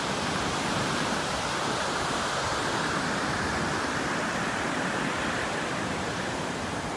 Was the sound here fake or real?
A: real